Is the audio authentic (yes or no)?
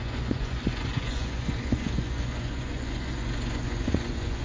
no